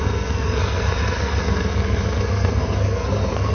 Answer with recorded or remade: remade